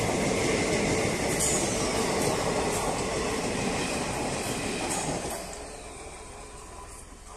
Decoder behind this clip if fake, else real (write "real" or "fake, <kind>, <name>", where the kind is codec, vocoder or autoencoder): real